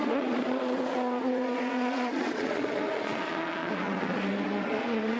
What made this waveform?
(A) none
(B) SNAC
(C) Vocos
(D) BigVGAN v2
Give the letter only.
C